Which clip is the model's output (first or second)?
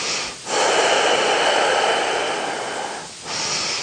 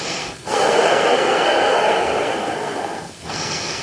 second